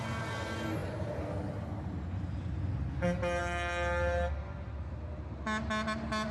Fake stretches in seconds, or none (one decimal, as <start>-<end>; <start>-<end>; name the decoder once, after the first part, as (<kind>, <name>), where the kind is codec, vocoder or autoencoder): none